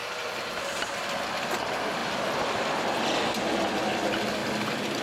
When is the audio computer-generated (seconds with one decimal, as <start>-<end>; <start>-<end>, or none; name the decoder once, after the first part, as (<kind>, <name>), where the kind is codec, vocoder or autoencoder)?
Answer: 0.0-0.9 (vocoder, BigVGAN v2)

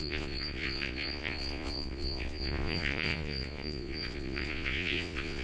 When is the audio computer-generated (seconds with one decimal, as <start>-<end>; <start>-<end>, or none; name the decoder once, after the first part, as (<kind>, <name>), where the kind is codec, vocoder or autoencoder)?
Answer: 0.0-5.4 (vocoder, Vocos)

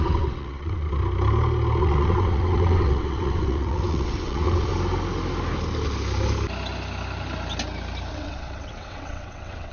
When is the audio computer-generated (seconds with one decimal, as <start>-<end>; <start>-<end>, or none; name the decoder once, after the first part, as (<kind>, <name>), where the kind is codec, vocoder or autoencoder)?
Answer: 0.0-1.0 (vocoder, WaveNeXt); 1.8-4.7; 8.1-9.7

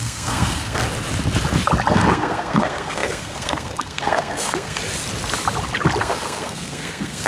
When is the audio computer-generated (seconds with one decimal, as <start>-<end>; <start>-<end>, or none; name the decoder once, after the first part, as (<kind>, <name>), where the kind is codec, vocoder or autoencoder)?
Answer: 0.0-0.8 (codec, SNAC); 1.9-4.8; 6.0-7.3

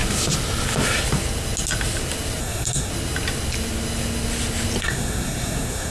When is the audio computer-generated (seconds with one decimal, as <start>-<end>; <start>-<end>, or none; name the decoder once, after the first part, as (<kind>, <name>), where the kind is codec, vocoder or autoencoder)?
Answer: 2.4-2.9 (codec, SNAC); 4.8-5.9

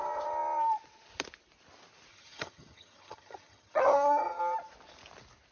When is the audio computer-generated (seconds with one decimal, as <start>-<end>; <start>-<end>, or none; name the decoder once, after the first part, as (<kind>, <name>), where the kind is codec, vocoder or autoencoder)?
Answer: 2.1-4.4 (vocoder, HiFi-GAN)

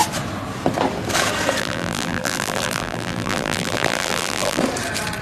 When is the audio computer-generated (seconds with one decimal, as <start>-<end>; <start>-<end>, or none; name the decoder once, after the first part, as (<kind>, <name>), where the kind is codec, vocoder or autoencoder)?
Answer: 1.6-4.6 (vocoder, BigVGAN v2)

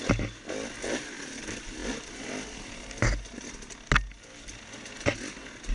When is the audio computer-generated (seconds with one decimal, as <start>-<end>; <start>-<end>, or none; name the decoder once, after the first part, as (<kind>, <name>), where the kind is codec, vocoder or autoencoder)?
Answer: none